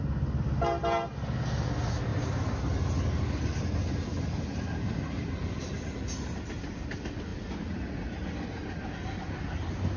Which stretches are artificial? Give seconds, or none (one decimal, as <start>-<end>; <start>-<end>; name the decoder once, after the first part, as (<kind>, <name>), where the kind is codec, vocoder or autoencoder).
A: none